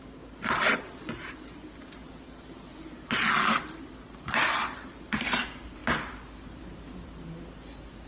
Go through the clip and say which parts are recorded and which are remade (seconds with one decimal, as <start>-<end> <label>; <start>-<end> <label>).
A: 0.0-8.1 recorded